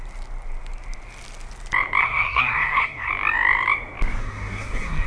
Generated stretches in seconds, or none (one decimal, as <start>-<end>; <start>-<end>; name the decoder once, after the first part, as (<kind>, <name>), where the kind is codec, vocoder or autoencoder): 2.0-3.1 (codec, SNAC); 4.2-5.1